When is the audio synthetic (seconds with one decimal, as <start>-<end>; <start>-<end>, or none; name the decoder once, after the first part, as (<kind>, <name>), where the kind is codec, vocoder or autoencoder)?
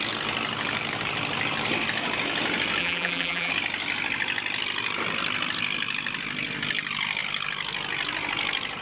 2.8-3.5 (vocoder, BigVGAN v2)